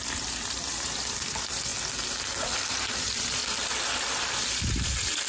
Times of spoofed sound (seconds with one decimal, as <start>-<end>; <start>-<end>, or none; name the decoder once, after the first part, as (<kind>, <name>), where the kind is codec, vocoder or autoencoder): 0.0-1.7 (vocoder, BigVGAN v2); 3.0-3.4; 4.7-5.3